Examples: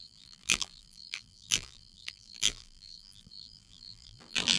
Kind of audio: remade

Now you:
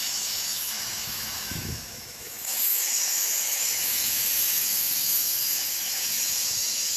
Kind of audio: remade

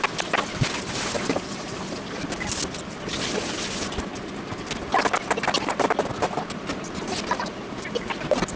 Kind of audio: recorded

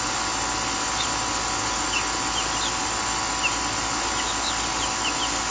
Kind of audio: recorded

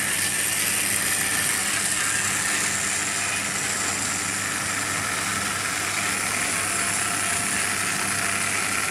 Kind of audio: recorded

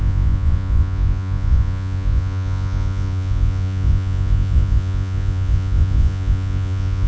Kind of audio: remade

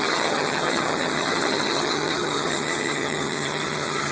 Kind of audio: remade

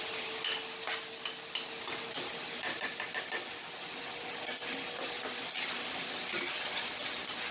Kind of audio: recorded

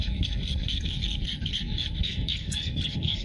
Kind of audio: remade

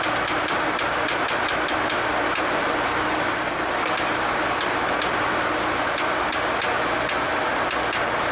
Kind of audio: recorded